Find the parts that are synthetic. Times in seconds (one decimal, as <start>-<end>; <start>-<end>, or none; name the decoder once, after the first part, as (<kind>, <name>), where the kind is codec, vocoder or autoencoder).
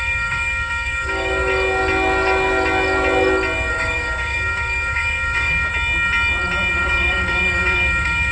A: 0.0-1.5 (codec, DAC); 3.7-5.7; 6.7-8.3